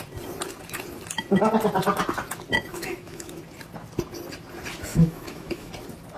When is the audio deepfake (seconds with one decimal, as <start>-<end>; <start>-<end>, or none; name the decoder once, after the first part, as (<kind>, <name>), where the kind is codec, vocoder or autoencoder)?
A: 2.7-3.4 (autoencoder, DAC-VAE); 4.9-5.7